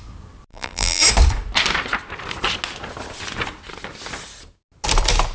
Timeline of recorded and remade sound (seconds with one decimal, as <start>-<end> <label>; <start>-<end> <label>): 0.0-0.5 recorded; 0.5-1.0 remade; 1.0-5.3 recorded